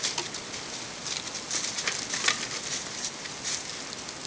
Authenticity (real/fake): real